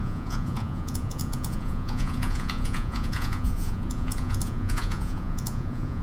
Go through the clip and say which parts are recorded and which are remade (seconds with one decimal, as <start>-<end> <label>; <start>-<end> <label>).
0.0-6.0 remade